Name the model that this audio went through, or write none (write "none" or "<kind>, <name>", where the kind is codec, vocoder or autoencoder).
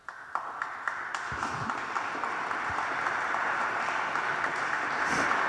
none